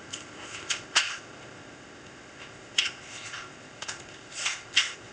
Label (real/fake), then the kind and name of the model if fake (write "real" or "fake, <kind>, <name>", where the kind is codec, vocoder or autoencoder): fake, codec, ZipCodec